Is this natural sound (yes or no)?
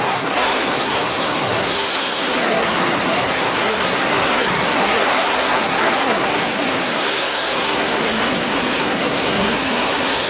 no